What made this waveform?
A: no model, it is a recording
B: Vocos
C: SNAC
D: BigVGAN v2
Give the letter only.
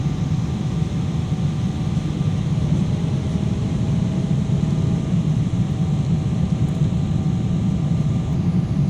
A